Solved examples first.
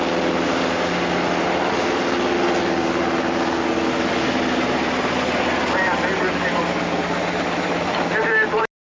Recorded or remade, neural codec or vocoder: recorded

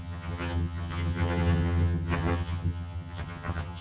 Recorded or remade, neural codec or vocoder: remade, vocoder, HiFi-GAN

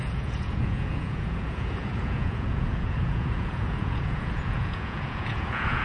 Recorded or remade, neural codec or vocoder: remade, vocoder, Vocos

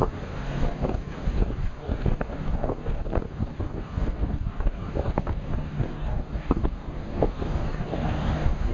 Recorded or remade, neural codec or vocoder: remade, codec, DAC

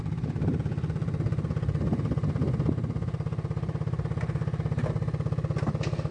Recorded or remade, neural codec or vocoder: recorded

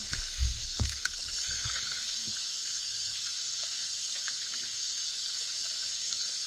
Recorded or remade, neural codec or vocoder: remade, codec, SNAC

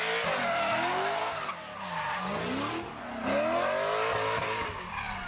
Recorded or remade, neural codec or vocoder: recorded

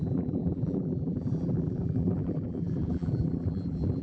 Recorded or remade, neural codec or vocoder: remade, vocoder, BigVGAN v2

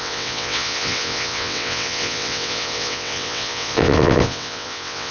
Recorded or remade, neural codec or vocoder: remade, vocoder, WaveNeXt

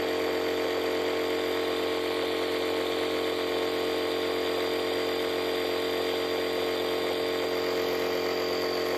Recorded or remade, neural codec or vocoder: recorded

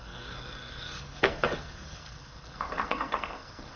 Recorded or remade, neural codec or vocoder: remade, codec, SNAC